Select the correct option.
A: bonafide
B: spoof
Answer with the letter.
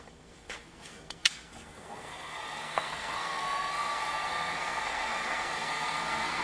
B